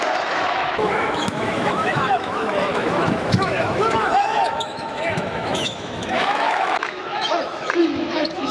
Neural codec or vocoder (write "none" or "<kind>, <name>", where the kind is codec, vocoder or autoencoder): autoencoder, DAC-VAE